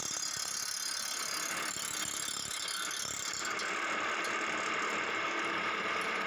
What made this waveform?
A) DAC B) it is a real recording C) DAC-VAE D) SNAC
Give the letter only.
B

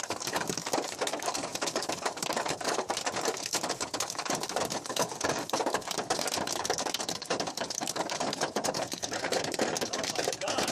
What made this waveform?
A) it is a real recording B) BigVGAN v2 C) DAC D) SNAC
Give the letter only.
C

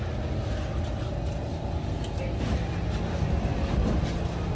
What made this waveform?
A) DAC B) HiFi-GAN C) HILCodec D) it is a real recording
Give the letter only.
D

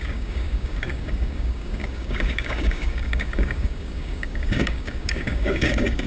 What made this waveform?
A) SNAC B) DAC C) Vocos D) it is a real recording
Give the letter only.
B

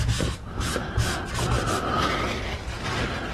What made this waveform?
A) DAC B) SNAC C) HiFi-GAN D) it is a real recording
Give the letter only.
D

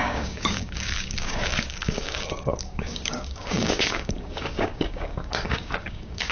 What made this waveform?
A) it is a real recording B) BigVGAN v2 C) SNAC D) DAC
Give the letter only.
D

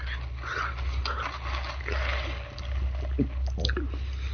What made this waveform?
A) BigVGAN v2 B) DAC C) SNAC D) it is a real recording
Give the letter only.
D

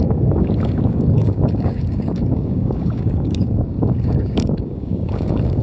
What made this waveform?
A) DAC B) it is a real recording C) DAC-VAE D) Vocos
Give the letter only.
A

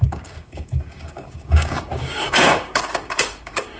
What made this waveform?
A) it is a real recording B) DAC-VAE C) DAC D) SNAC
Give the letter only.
C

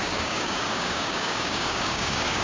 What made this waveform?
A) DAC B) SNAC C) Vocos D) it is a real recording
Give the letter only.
A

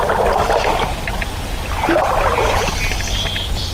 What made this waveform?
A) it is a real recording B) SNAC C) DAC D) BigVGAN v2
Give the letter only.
A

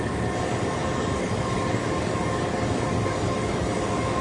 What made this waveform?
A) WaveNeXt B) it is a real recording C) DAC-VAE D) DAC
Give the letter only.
D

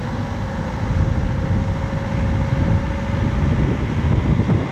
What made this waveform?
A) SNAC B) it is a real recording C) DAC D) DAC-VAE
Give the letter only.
B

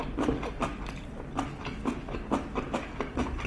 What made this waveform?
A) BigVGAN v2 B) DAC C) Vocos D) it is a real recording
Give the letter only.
D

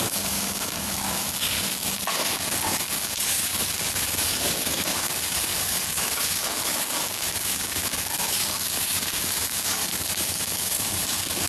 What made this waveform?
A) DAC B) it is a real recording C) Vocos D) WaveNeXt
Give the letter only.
A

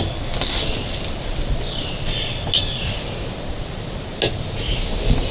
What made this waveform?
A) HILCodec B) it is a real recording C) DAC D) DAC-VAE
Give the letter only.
B